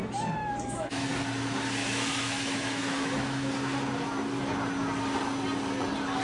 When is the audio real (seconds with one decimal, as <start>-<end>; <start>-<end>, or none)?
0.0-0.4; 1.1-1.8; 3.5-6.2